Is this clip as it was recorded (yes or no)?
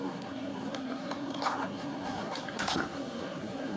no